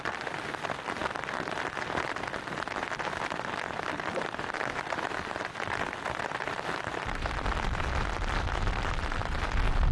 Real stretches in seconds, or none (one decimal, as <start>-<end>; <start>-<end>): 0.0-9.9